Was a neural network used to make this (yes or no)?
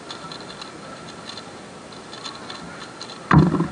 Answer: no